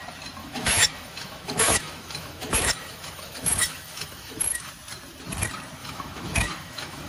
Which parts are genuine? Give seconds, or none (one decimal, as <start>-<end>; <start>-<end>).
0.0-0.4; 4.7-5.8